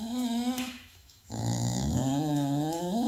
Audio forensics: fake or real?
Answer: fake